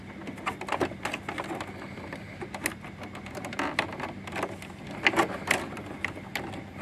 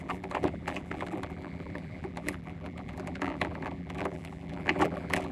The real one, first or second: first